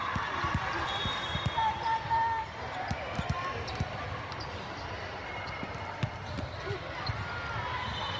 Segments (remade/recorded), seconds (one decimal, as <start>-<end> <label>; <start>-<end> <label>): 0.0-4.9 remade; 4.9-8.2 recorded

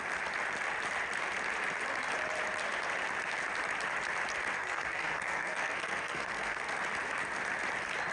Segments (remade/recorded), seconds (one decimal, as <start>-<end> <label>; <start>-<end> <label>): 0.0-4.6 recorded; 4.6-6.8 remade; 6.8-8.1 recorded

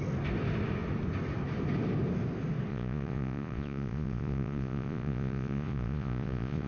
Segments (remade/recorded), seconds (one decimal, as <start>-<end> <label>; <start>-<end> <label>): 0.0-2.7 recorded; 2.7-6.7 remade

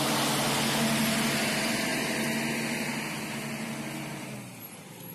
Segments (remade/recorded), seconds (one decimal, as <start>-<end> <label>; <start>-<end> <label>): 0.0-5.1 recorded

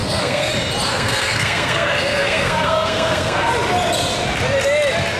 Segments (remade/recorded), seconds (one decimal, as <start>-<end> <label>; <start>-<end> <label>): 0.0-0.5 remade; 0.5-0.9 recorded; 0.9-3.5 remade; 3.5-5.2 recorded

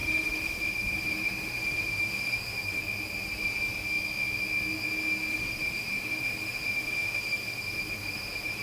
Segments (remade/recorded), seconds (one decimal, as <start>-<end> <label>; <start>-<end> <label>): 0.0-2.8 remade; 2.8-5.3 recorded; 5.3-8.6 remade

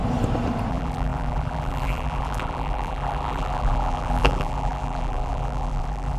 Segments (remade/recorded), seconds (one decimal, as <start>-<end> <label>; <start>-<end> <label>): 0.0-0.7 recorded; 0.7-6.2 remade